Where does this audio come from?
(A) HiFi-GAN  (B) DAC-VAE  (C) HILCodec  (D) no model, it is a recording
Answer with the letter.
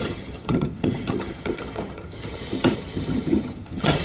A